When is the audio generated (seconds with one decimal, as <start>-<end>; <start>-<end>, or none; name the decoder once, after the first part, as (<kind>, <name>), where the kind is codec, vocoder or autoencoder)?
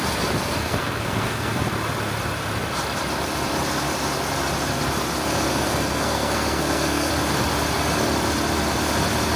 0.6-1.7 (codec, SNAC); 5.5-7.1